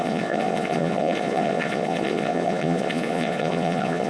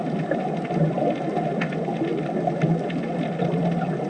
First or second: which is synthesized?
first